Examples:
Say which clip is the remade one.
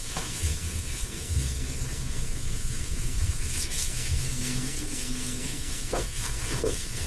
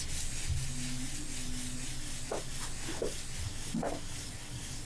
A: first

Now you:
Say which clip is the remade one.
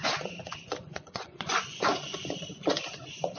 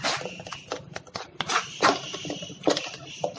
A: first